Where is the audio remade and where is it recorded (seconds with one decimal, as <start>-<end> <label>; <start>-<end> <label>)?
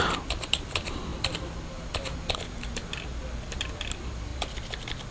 0.0-1.1 recorded; 1.1-1.9 remade; 1.9-3.1 recorded; 3.1-3.7 remade; 3.7-4.3 recorded; 4.3-5.1 remade